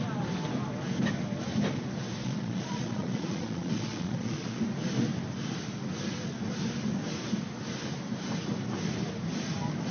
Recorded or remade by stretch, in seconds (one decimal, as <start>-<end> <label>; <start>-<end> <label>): 0.0-2.2 recorded; 2.2-4.6 remade; 4.6-9.9 recorded

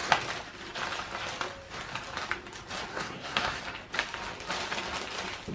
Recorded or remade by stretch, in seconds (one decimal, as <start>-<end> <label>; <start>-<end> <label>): 0.0-2.9 recorded; 2.9-3.6 remade; 3.6-5.5 recorded

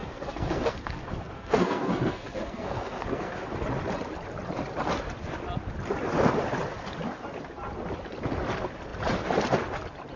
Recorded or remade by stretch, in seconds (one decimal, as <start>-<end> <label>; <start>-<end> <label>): 0.0-3.4 remade; 3.4-10.2 recorded